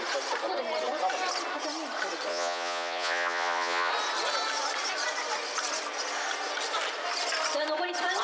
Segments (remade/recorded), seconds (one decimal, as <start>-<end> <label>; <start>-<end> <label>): 0.0-2.3 recorded; 2.3-3.9 remade; 3.9-8.2 recorded